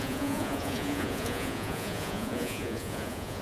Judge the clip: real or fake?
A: fake